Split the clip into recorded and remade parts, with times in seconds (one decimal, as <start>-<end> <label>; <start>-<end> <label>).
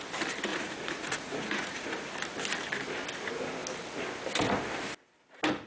0.0-0.5 recorded; 0.5-2.1 remade; 2.1-5.7 recorded